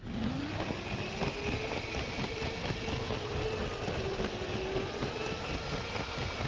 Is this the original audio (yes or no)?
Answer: yes